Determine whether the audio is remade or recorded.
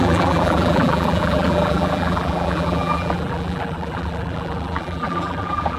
remade